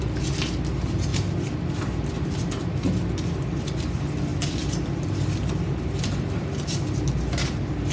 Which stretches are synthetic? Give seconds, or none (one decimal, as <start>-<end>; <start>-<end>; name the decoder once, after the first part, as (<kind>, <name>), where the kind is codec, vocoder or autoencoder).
4.3-5.4 (vocoder, BigVGAN v2)